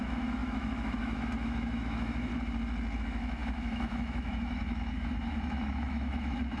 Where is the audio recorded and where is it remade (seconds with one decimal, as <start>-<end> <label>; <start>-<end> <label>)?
0.0-2.3 remade; 2.3-3.0 recorded; 3.0-6.6 remade